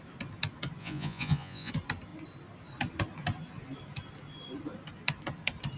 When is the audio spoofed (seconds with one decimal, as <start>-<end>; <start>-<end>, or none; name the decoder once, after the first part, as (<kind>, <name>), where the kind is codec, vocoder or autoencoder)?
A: 0.8-1.7 (vocoder, Vocos)